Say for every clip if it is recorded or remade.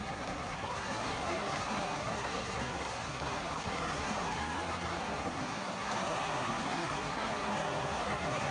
remade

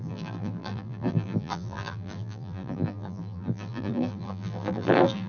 remade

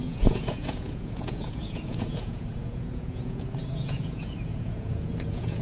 remade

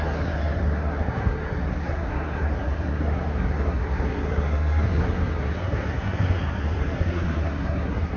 remade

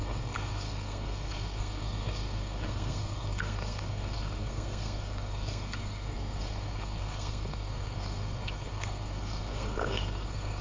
remade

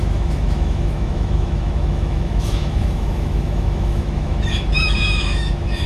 remade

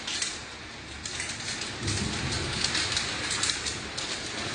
recorded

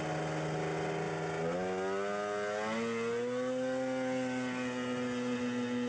recorded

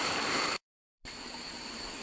remade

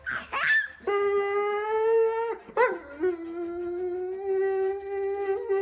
recorded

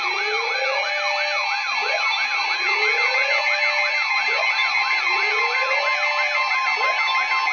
recorded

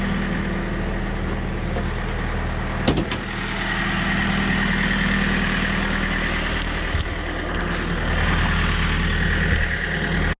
recorded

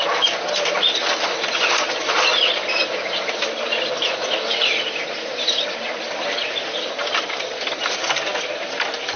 recorded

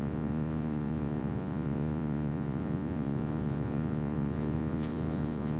remade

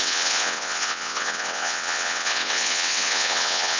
remade